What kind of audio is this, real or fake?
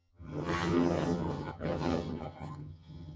fake